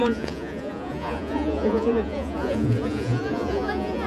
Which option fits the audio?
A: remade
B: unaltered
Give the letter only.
A